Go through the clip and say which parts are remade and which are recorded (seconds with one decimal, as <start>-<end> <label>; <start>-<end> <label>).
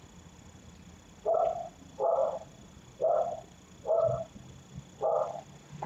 0.0-2.2 recorded; 2.2-4.2 remade; 4.2-5.9 recorded